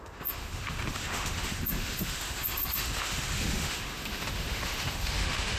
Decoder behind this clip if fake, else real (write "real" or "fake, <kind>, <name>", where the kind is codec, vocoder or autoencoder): fake, autoencoder, DAC-VAE